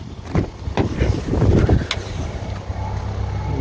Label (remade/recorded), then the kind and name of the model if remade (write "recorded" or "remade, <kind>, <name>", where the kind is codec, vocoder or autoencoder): recorded